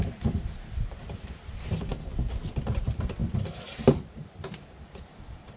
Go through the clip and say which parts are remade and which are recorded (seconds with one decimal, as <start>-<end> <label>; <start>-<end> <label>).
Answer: 0.0-1.9 remade; 1.9-2.5 recorded; 2.5-5.6 remade